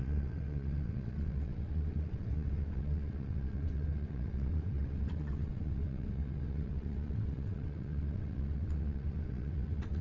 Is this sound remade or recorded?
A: remade